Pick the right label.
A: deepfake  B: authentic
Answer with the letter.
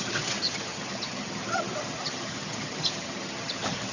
A